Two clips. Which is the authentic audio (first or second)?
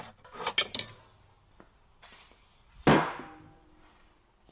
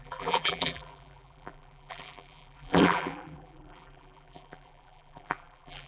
first